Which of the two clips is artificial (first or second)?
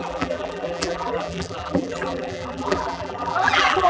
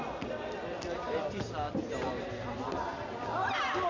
first